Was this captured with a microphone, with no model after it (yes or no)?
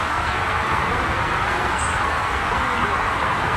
no